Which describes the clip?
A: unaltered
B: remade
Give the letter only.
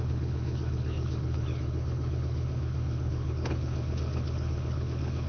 B